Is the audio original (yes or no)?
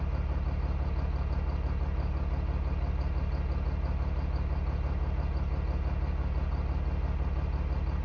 yes